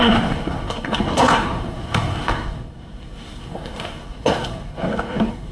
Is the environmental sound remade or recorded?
remade